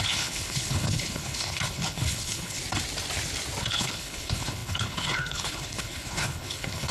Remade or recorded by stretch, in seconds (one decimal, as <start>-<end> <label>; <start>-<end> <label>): 0.0-2.6 remade; 2.6-3.6 recorded; 3.6-6.9 remade